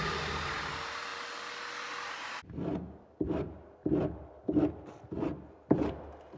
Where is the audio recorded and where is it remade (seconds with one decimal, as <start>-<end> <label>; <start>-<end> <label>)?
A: 0.0-6.4 recorded